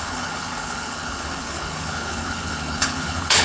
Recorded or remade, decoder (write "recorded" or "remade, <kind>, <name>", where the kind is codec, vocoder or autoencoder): remade, codec, HILCodec